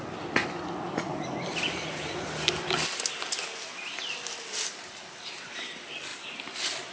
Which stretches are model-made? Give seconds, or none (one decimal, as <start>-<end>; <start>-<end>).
none